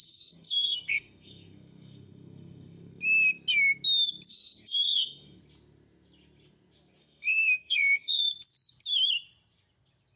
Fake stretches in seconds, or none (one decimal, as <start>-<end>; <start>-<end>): 0.0-3.0; 4.3-5.4; 7.0-8.2